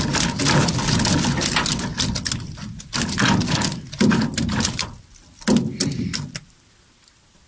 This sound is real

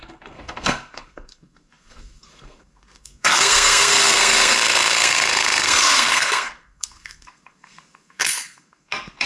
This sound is fake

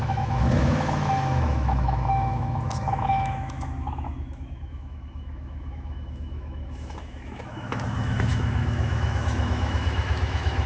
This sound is fake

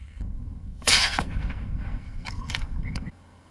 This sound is fake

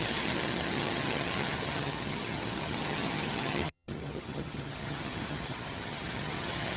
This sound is fake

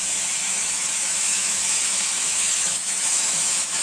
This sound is fake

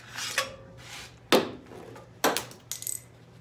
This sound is real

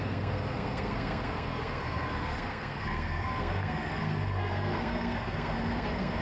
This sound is fake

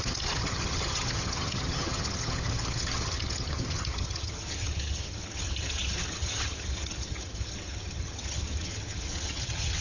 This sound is fake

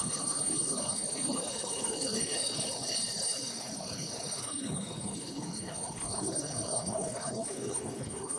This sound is fake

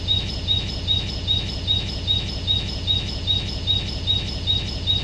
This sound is real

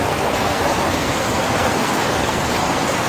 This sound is fake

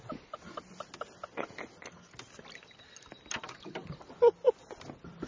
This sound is real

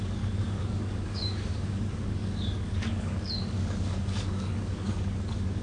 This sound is fake